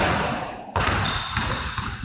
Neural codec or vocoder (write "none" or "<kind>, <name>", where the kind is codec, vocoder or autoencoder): vocoder, Vocos